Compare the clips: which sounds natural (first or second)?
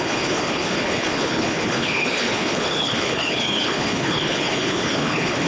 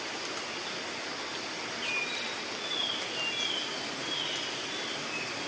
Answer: second